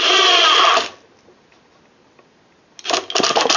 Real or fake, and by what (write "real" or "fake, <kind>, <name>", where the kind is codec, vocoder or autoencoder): real